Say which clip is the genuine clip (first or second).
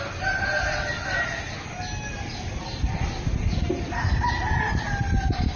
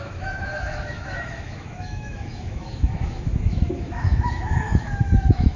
first